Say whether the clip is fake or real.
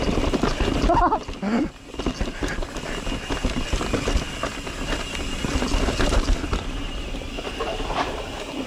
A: real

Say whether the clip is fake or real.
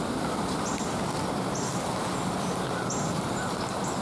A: real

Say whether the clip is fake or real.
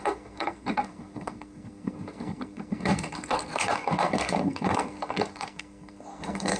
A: fake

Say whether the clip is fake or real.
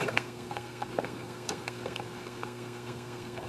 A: fake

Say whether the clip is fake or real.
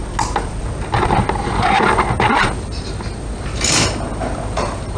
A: real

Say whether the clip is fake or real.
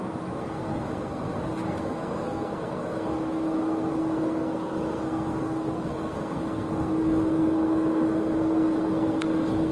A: fake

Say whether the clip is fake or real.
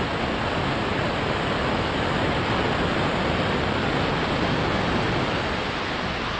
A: real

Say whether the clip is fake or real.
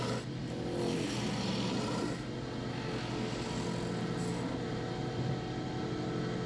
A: real